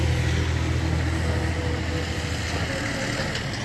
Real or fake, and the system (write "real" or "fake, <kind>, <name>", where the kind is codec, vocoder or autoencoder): real